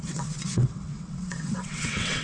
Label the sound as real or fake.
fake